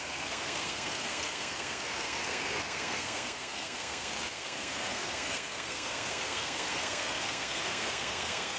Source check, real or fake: fake